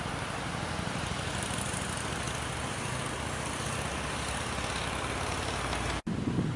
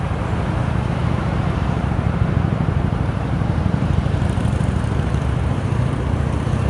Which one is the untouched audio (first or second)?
first